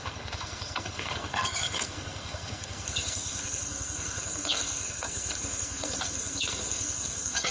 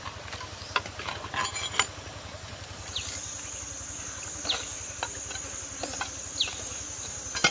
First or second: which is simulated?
first